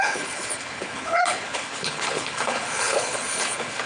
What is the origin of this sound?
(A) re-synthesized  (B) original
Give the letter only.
A